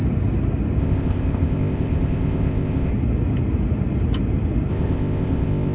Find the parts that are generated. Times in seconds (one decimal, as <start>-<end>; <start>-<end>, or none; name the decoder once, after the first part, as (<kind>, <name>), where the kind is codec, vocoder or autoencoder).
0.8-2.9 (codec, ZipCodec); 4.7-5.7